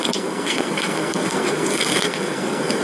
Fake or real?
fake